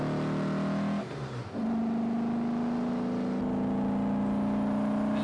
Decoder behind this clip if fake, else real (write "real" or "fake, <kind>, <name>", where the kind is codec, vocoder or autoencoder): real